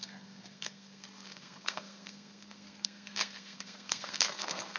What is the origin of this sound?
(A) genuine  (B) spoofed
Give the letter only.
B